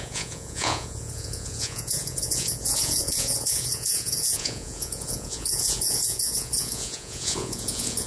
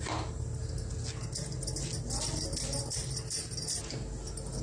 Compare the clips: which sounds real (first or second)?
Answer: second